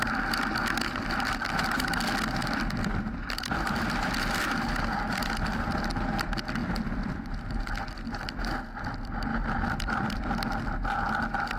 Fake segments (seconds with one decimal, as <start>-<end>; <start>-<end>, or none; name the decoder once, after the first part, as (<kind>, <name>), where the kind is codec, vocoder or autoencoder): 2.4-5.8 (vocoder, BigVGAN v2); 6.6-7.6; 9.3-10.3